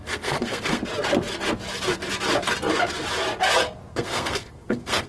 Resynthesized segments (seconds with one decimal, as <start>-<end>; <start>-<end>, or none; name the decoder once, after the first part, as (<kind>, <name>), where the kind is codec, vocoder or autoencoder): 0.0-0.8 (codec, SNAC); 3.9-5.1